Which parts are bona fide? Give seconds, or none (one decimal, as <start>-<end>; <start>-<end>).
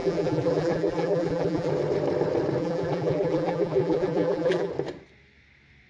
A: 1.7-2.6; 4.7-5.9